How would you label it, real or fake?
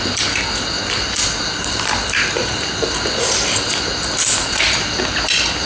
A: real